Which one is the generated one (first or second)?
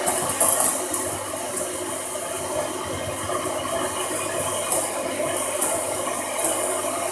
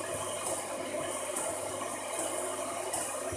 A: second